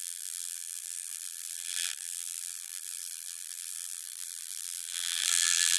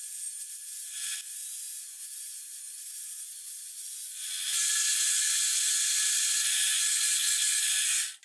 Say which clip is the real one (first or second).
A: second